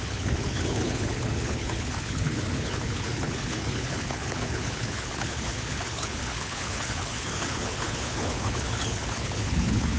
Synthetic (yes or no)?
yes